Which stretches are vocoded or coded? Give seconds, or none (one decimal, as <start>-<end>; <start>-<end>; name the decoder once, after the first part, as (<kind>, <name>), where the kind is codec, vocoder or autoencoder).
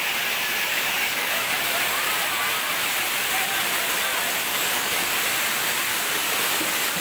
0.7-1.5 (codec, DAC); 4.5-5.1; 5.9-6.6